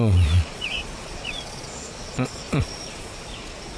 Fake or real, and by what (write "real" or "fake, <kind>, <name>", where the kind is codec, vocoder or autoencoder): fake, vocoder, Vocos